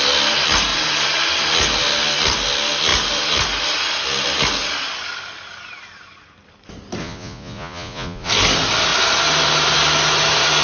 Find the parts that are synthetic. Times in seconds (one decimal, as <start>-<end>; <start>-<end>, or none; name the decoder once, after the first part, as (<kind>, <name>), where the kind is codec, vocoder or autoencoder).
7.0-8.3 (vocoder, Vocos)